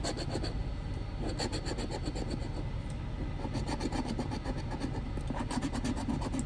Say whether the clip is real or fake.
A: real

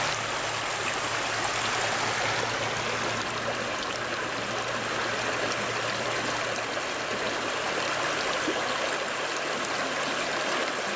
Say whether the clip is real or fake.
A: real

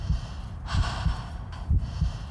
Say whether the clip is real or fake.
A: fake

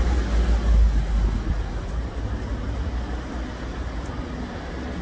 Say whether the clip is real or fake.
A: real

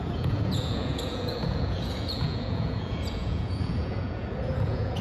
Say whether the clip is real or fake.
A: fake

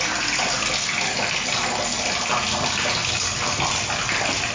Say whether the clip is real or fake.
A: real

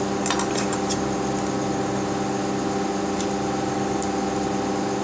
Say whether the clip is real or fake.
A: real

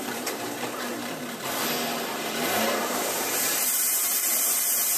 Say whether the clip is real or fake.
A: fake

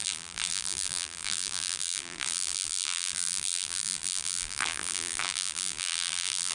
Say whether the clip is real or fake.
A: fake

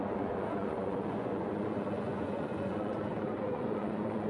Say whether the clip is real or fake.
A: fake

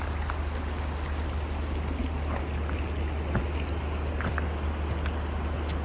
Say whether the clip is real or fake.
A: real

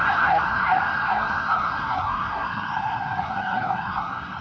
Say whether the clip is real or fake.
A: fake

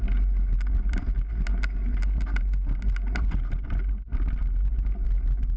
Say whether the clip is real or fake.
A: real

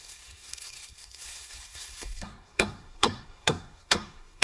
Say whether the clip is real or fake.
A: fake